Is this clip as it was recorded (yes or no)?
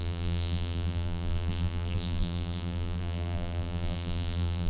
no